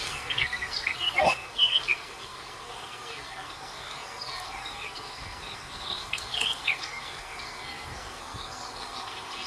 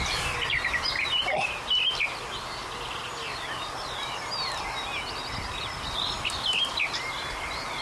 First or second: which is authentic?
second